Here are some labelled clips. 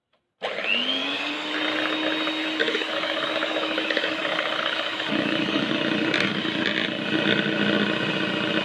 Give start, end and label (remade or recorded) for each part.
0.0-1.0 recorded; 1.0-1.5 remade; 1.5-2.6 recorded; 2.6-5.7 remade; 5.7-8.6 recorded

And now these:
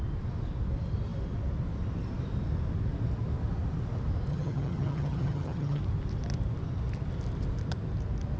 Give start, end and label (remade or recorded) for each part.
0.0-4.3 recorded; 4.3-5.8 remade; 5.8-8.4 recorded

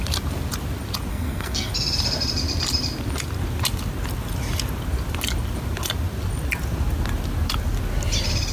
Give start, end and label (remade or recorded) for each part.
0.0-1.1 recorded; 1.1-1.7 remade; 1.7-8.5 recorded

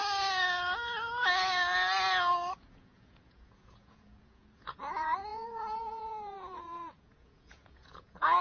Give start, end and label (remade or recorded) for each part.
0.0-2.7 recorded; 2.7-8.4 remade

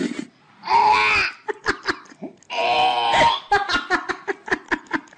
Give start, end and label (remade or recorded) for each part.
0.0-1.0 remade; 1.0-4.1 recorded; 4.1-5.2 remade

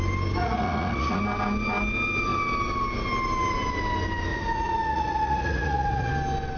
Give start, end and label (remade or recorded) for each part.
0.0-0.4 recorded; 0.4-1.2 remade; 1.2-4.3 recorded; 4.3-6.1 remade; 6.1-6.6 recorded

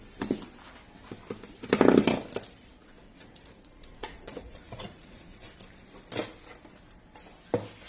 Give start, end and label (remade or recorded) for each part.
0.0-2.8 recorded; 2.8-5.6 remade; 5.6-7.9 recorded